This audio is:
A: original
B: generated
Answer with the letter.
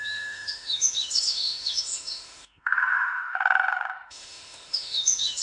B